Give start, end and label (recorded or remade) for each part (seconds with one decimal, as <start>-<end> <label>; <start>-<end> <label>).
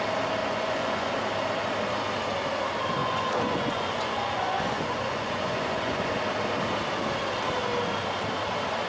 0.0-0.4 recorded; 0.4-1.1 remade; 1.1-3.0 recorded; 3.0-6.1 remade; 6.1-8.9 recorded